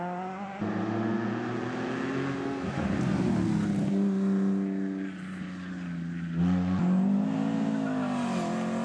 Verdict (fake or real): real